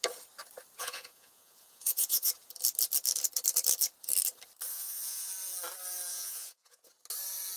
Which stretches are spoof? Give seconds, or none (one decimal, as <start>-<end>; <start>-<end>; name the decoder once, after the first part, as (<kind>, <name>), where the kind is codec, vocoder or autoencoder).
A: 0.8-2.3 (vocoder, Vocos); 4.7-5.3; 6.1-6.9